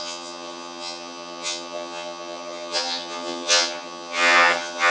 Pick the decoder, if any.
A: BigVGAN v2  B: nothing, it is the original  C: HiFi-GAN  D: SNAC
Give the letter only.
C